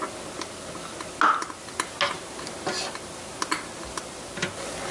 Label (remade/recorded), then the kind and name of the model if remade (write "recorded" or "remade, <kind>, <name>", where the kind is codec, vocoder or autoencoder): recorded